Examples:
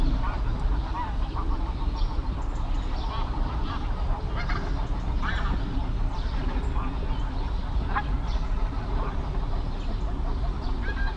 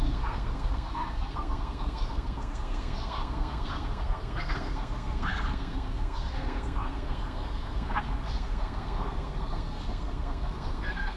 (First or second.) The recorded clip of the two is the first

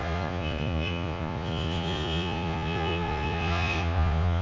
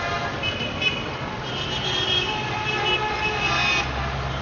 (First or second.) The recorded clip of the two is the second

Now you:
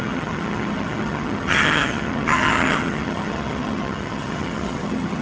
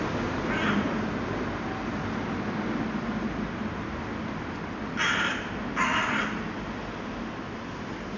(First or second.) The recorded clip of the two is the second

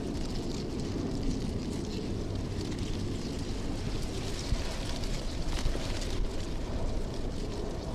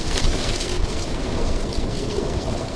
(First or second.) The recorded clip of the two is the first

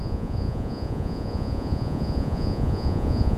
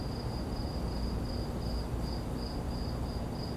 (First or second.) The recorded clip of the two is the second